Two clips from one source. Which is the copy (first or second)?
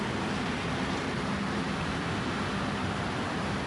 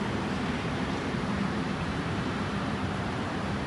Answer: second